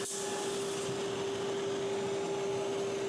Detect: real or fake real